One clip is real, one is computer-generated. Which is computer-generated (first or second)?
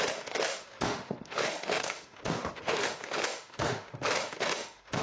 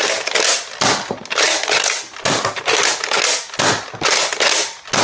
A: first